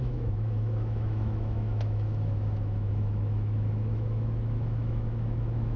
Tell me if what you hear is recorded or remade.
remade